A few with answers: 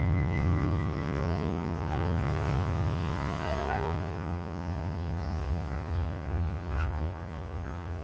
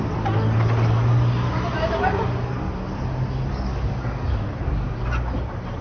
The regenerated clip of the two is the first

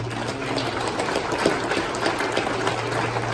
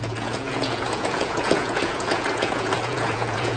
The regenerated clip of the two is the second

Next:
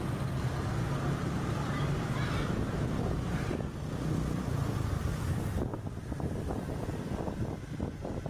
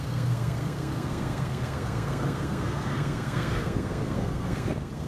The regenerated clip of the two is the second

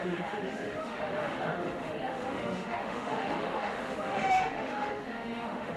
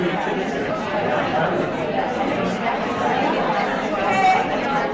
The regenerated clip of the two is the first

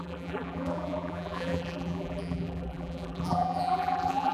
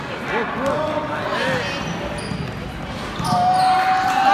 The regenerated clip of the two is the first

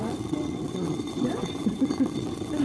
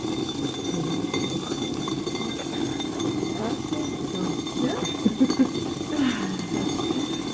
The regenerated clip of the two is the first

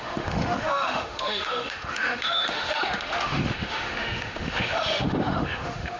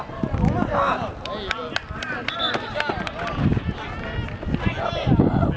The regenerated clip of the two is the first